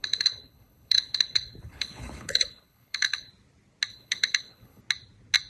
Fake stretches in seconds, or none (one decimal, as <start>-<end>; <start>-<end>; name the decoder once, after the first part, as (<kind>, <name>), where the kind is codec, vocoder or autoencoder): 0.0-3.3 (codec, HILCodec); 3.9-4.8